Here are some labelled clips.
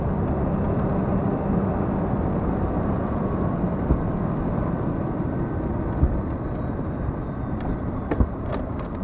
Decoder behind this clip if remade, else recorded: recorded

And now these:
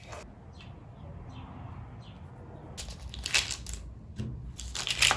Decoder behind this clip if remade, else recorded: recorded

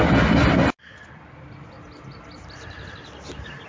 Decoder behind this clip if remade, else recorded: recorded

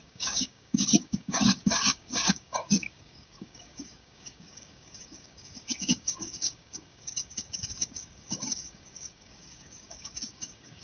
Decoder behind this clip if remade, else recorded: remade, codec, DAC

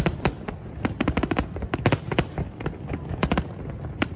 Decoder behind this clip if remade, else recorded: recorded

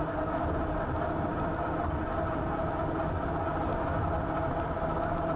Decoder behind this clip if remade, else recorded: recorded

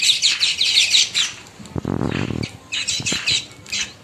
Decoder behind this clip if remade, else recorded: remade, vocoder, BigVGAN v2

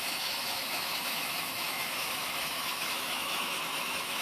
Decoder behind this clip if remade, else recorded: remade, autoencoder, DAC-VAE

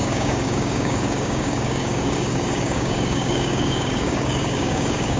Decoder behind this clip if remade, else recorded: remade, codec, DAC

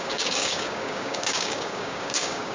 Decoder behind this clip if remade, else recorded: remade, codec, DAC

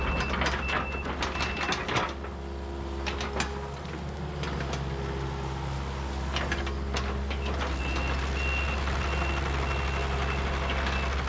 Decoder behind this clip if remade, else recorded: recorded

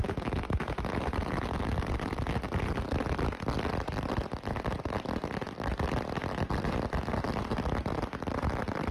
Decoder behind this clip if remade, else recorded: recorded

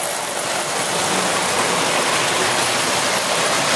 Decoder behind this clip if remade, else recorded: recorded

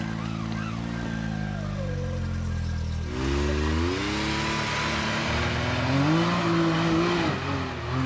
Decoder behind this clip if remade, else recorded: recorded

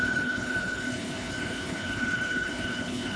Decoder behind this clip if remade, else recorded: remade, codec, HILCodec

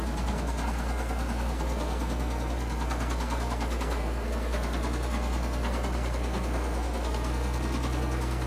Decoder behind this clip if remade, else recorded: remade, codec, SNAC